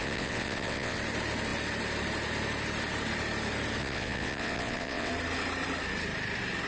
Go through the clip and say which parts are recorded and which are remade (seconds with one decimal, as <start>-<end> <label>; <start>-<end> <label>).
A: 0.0-1.0 remade; 1.0-3.8 recorded; 3.8-5.1 remade; 5.1-6.7 recorded